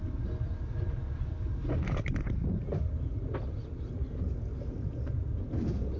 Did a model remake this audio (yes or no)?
no